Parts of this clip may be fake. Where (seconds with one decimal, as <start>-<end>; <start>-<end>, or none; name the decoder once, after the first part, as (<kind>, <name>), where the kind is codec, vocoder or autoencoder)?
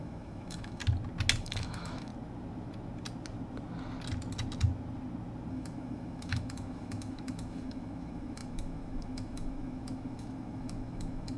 0.0-0.8 (autoencoder, DAC-VAE); 1.4-2.1; 5.5-11.4